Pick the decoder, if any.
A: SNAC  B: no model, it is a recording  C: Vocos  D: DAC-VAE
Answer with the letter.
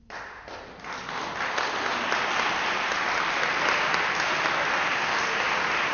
B